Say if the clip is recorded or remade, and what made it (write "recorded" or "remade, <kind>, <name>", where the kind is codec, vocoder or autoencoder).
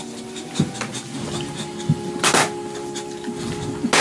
recorded